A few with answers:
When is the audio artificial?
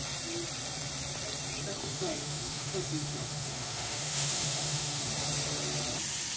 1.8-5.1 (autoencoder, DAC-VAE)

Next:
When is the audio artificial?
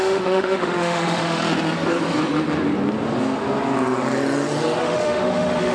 0.0-1.4 (autoencoder, DAC-VAE); 4.8-5.7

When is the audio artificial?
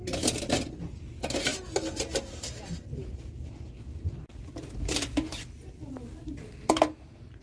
none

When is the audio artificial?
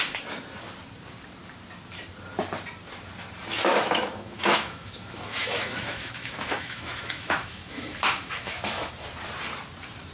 3.6-8.9 (autoencoder, DAC-VAE)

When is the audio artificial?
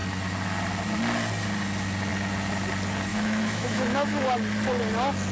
3.1-4.2 (autoencoder, DAC-VAE)